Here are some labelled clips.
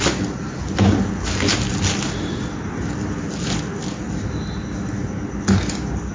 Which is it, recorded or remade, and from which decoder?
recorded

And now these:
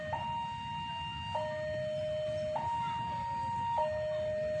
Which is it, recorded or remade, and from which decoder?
recorded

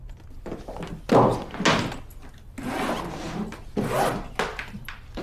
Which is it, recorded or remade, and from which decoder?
recorded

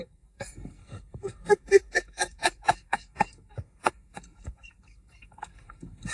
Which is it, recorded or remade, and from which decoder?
remade, codec, SNAC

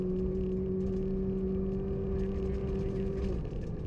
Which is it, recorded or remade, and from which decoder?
recorded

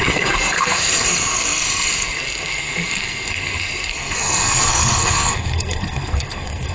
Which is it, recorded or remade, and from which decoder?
remade, codec, SNAC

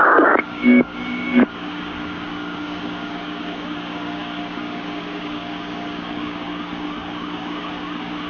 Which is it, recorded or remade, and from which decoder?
remade, codec, DAC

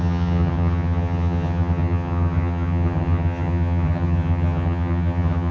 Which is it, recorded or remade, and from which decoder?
remade, vocoder, HiFi-GAN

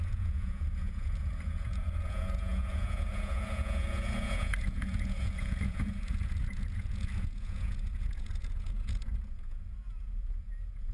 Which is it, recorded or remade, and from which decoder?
remade, vocoder, Vocos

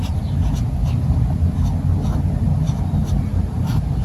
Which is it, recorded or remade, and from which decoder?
recorded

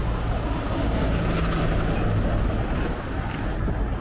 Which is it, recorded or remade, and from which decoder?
recorded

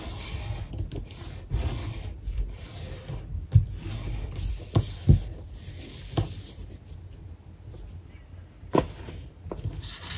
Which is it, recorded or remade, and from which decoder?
recorded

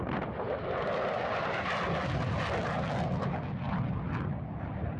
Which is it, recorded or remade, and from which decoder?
recorded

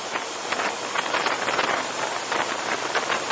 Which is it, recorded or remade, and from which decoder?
recorded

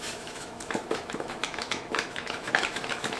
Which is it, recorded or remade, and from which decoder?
remade, autoencoder, DAC-VAE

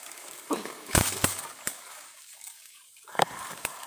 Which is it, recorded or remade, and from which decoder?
remade, codec, DAC